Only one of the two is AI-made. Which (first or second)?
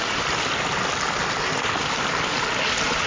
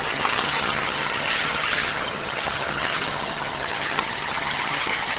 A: second